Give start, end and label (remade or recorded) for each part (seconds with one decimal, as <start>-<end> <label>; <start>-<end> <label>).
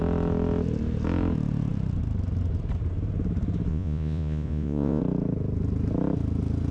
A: 0.0-3.7 recorded; 3.7-5.0 remade; 5.0-6.7 recorded